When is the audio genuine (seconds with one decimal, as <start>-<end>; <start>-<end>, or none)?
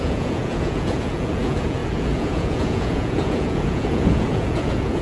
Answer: none